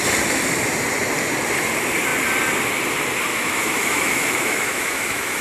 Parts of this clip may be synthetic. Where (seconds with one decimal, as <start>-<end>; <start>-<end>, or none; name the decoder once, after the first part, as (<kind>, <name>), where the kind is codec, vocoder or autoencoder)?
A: 3.3-5.4 (autoencoder, DAC-VAE)